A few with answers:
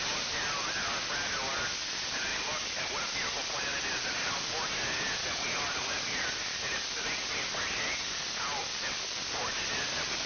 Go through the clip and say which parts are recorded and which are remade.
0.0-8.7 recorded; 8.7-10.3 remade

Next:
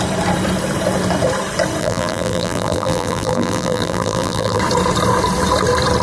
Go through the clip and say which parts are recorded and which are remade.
0.0-1.8 recorded; 1.8-4.6 remade; 4.6-6.0 recorded

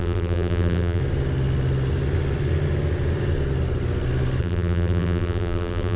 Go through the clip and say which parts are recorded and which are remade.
0.0-1.0 remade; 1.0-4.4 recorded; 4.4-6.0 remade

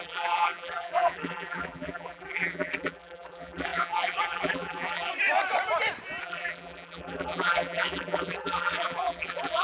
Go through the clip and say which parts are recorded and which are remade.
0.0-5.1 remade; 5.1-6.2 recorded; 6.2-9.6 remade

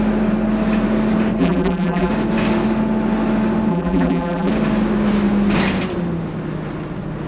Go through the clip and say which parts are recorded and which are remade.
0.0-1.4 recorded; 1.4-2.1 remade; 2.1-3.7 recorded; 3.7-4.5 remade; 4.5-7.3 recorded

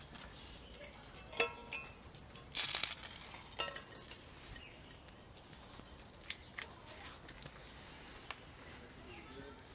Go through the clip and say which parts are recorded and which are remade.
0.0-9.7 recorded